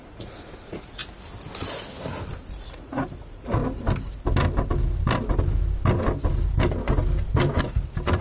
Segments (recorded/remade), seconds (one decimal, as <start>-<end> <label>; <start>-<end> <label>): 0.0-1.0 remade; 1.0-2.6 recorded; 2.6-3.6 remade; 3.6-7.6 recorded; 7.6-8.2 remade